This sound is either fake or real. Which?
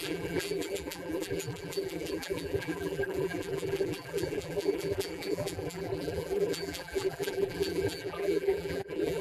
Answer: fake